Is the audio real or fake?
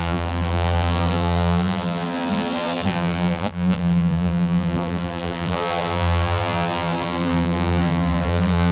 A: fake